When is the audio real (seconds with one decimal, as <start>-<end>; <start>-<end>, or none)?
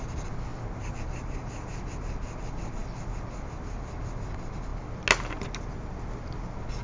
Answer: 0.0-6.8